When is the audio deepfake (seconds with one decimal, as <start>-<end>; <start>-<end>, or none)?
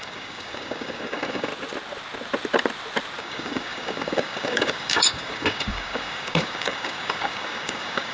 0.0-1.5; 3.2-8.1